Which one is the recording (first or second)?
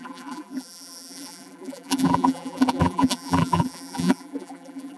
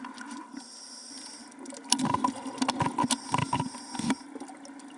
second